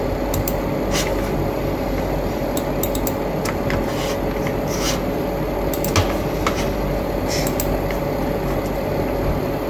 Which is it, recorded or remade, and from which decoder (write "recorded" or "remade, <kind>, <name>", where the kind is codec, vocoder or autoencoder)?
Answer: recorded